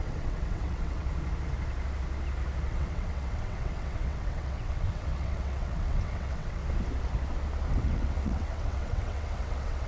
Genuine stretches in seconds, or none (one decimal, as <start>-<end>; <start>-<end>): 1.0-2.7; 6.6-7.7